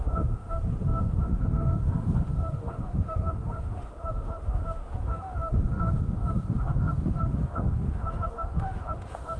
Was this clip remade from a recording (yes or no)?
yes